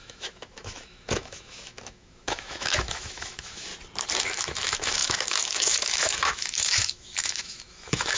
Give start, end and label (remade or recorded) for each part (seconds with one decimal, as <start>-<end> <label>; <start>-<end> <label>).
0.0-3.7 remade; 3.7-4.2 recorded; 4.2-8.2 remade